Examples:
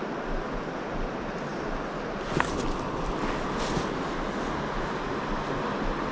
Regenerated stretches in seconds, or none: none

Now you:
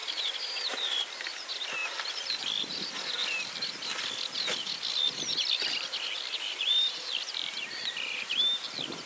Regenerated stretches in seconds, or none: 1.8-2.6 (vocoder, BigVGAN v2); 3.2-8.4

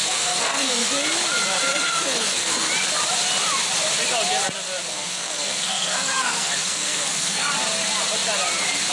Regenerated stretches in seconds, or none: 0.0-0.9 (codec, SNAC); 1.7-2.7; 4.9-7.5

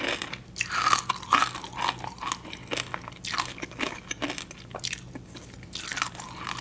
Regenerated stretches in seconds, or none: 3.5-4.2 (codec, DAC)